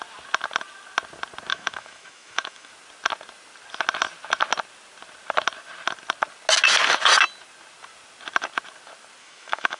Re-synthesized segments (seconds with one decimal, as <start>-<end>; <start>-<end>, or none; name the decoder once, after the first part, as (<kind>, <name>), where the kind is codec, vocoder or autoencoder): 1.5-2.7 (autoencoder, DAC-VAE); 9.2-9.8